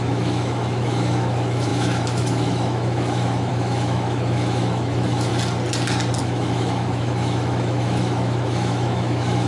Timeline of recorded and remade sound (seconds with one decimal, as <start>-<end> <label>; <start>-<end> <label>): 0.0-5.3 remade; 5.3-6.2 recorded; 6.2-9.5 remade